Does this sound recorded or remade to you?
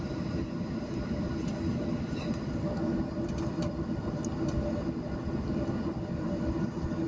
recorded